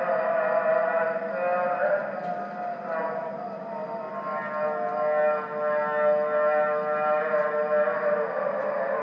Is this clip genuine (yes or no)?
yes